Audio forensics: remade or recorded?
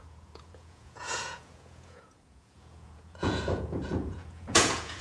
remade